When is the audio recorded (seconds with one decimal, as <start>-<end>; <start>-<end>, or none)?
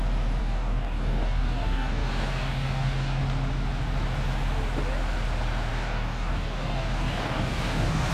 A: 0.0-0.4; 3.2-5.7